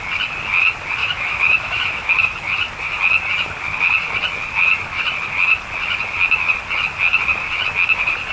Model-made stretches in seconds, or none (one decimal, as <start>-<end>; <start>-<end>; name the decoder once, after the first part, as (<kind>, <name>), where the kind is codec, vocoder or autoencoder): 1.0-2.1 (autoencoder, DAC-VAE)